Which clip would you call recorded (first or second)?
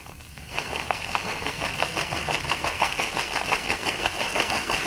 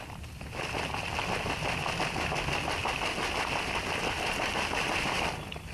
second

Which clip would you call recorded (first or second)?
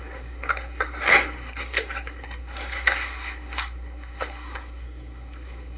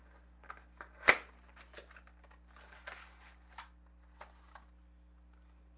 second